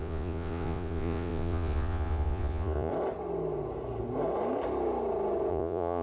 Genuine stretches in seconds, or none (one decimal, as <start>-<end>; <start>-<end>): 2.9-5.5